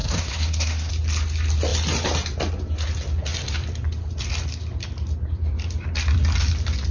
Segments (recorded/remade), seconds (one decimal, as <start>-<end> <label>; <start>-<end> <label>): 0.0-0.9 remade; 0.9-6.9 recorded